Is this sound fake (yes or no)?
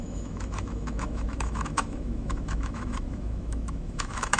yes